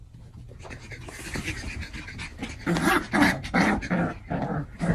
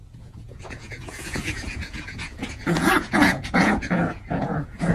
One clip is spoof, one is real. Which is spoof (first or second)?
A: second